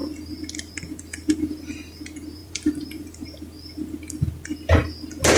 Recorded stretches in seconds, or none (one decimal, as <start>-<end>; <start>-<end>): 0.0-2.4; 3.4-5.4